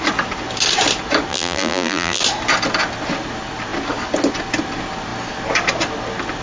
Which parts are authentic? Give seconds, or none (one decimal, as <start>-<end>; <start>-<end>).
0.0-1.3; 2.2-6.4

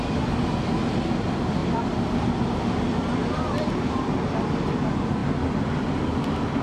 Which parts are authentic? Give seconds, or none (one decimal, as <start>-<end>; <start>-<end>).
0.0-1.6; 2.4-5.2; 6.0-6.6

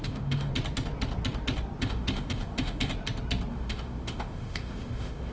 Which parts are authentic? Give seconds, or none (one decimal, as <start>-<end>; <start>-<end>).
0.5-1.8; 2.9-3.5

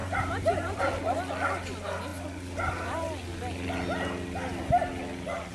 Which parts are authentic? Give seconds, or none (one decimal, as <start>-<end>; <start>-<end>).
0.8-5.5

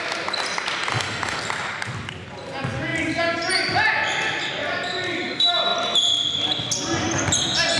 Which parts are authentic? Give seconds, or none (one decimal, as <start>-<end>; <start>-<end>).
0.0-0.9; 1.4-7.8

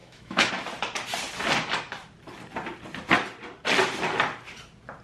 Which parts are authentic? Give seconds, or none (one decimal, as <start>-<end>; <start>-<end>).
0.5-5.0

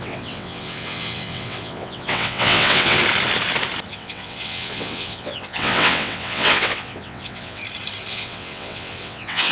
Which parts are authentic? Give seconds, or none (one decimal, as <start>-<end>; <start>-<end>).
3.0-3.9; 7.6-8.1

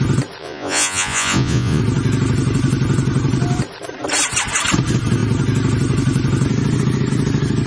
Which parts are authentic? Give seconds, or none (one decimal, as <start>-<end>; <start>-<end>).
0.0-0.4; 1.8-7.7